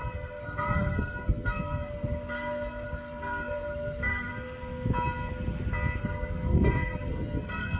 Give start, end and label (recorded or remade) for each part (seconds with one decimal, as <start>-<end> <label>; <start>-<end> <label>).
0.0-4.3 remade; 4.3-6.0 recorded; 6.0-7.8 remade